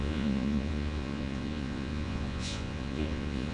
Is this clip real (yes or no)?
no